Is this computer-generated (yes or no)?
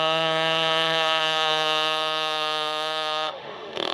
yes